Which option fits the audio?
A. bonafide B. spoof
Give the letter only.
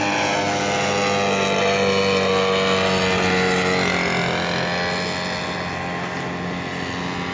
A